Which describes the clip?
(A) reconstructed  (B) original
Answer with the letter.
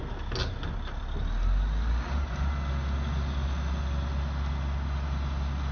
B